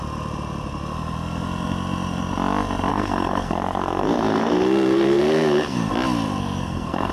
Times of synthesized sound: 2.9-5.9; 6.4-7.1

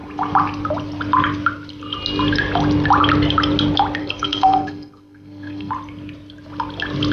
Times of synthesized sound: 4.0-5.7

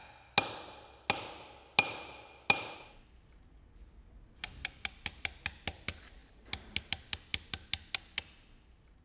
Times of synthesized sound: none

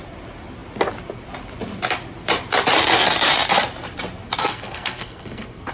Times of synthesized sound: 4.4-5.7

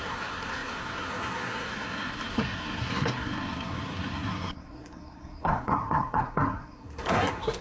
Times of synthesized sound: 0.0-7.6

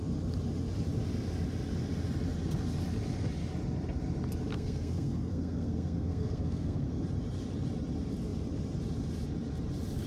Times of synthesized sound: 4.5-7.0